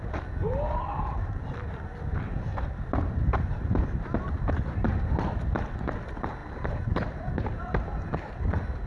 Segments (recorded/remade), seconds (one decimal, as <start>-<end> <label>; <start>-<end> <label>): 0.0-2.5 recorded; 2.5-5.7 remade; 5.7-6.4 recorded; 6.4-7.6 remade; 7.6-8.9 recorded